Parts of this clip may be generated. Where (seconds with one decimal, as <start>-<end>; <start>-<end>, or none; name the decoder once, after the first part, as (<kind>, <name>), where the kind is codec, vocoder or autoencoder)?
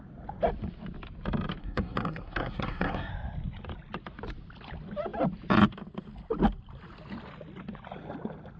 1.6-3.1 (codec, SNAC)